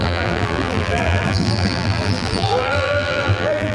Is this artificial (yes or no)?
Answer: yes